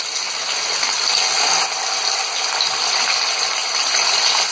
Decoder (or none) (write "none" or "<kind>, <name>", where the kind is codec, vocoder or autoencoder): none